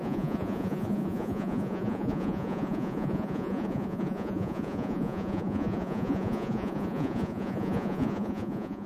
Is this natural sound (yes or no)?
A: no